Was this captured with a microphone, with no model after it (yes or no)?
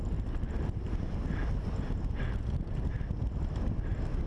yes